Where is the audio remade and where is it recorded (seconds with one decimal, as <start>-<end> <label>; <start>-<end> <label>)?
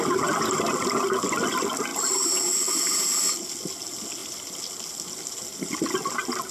0.0-4.2 recorded; 4.2-4.7 remade; 4.7-5.5 recorded; 5.5-6.1 remade; 6.1-6.5 recorded